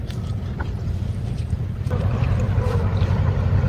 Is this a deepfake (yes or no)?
no